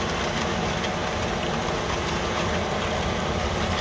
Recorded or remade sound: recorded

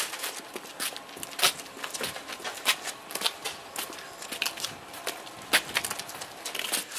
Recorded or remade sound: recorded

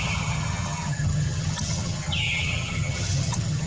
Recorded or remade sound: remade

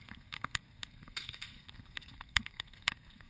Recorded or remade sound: remade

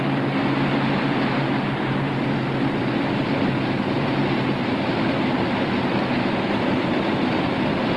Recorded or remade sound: recorded